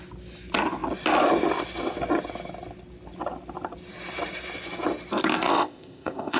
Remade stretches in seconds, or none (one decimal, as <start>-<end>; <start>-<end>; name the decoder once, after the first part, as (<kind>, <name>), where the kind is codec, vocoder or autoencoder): 5.5-6.4 (codec, ZipCodec)